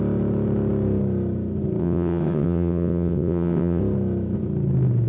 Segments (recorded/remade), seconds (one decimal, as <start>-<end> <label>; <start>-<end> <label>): 0.0-1.8 recorded; 1.8-3.8 remade; 3.8-5.1 recorded